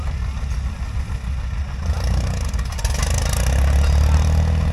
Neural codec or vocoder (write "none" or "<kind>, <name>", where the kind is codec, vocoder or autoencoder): none